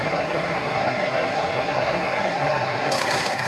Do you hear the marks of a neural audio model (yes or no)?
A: yes